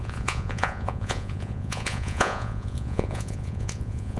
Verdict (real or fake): fake